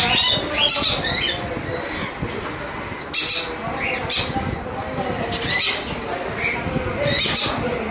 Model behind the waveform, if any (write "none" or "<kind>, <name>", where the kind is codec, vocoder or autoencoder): none